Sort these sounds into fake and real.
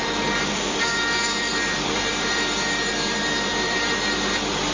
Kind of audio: fake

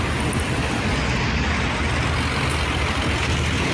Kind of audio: real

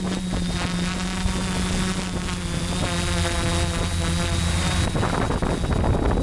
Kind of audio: real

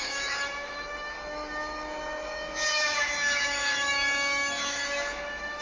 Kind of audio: fake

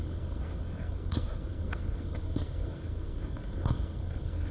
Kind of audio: fake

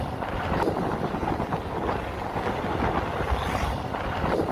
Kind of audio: real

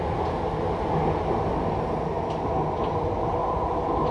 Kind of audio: real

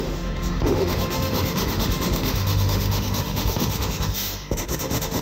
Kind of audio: fake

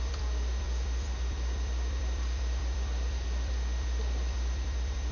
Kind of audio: fake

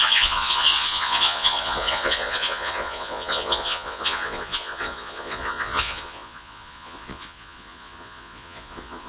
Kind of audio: fake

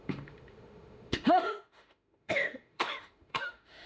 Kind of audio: fake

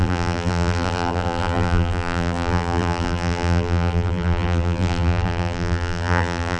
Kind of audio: fake